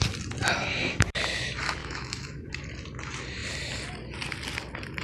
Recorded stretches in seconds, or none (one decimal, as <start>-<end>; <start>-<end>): 0.0-1.8; 2.5-5.0